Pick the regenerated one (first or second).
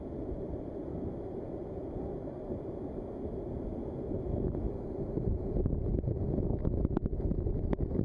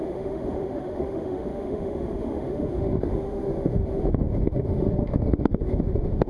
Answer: second